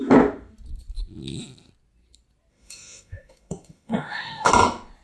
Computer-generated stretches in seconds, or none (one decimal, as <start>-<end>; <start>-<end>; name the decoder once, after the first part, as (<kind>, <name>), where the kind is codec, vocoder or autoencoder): 2.5-4.5 (autoencoder, DAC-VAE)